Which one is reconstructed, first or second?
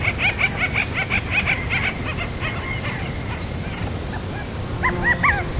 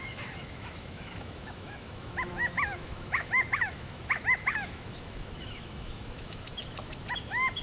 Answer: second